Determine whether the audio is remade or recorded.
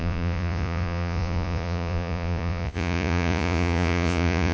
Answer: remade